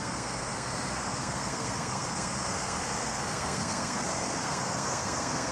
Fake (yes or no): yes